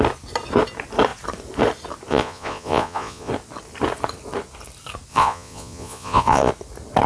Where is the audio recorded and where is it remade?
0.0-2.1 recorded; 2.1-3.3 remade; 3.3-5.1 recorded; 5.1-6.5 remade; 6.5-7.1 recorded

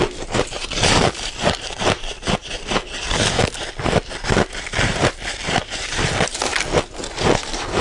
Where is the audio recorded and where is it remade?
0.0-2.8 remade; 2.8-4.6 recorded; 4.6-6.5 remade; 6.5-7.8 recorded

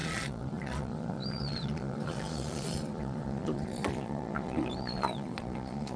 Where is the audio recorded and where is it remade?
0.0-6.0 remade